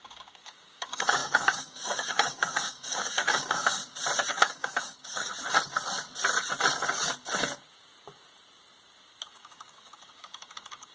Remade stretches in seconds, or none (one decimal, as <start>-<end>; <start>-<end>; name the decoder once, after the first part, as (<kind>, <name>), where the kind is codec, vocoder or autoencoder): 0.0-3.8 (codec, DAC); 4.3-5.3; 9.3-10.9